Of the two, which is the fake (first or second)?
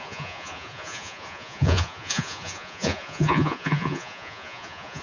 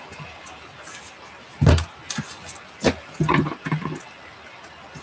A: first